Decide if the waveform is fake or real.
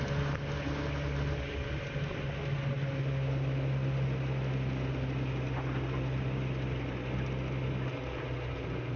real